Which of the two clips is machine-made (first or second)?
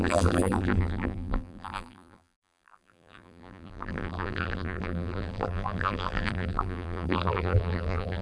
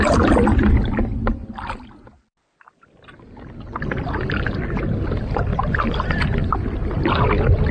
first